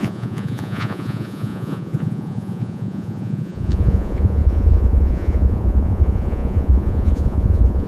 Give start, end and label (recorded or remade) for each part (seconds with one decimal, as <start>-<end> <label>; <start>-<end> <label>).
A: 0.0-7.9 remade